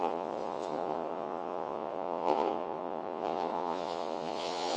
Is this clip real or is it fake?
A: fake